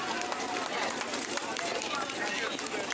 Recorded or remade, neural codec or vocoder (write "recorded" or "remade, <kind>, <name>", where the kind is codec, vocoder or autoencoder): recorded